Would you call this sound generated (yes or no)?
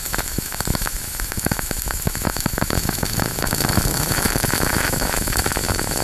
yes